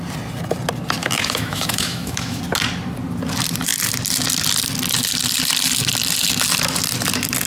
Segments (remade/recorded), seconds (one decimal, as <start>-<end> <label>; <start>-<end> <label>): 0.0-1.0 recorded; 1.0-2.4 remade; 2.4-7.5 recorded